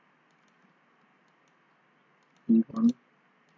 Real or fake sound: real